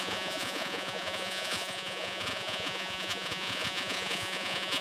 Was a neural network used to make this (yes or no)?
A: yes